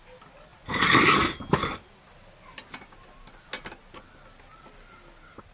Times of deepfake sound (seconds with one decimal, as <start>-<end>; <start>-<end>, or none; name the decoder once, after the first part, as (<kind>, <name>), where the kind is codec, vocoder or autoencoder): none